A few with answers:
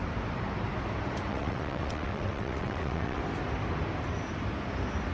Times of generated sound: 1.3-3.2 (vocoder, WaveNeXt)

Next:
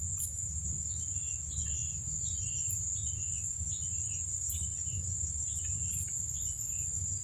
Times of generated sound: none

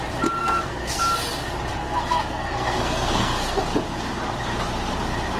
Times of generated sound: 0.4-1.0 (codec, SNAC); 1.7-3.6

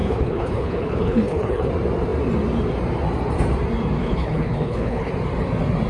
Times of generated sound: 0.0-1.7 (codec, HILCodec); 4.0-5.1

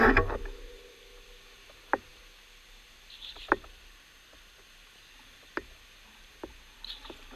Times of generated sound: none

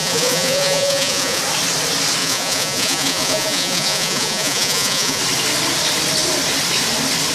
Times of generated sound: 0.0-1.4 (vocoder, Vocos); 2.2-5.2

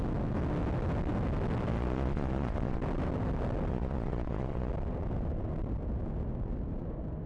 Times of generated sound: 1.7-2.8 (vocoder, Vocos); 3.7-4.7